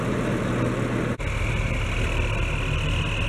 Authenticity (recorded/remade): recorded